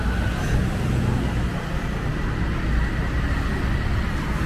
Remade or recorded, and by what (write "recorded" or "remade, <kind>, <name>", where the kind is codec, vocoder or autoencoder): recorded